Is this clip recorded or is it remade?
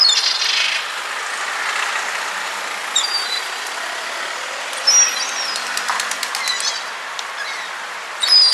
recorded